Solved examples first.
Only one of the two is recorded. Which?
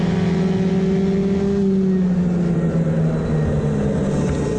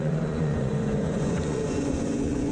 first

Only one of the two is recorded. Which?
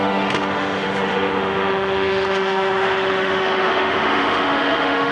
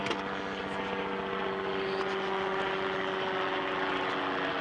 second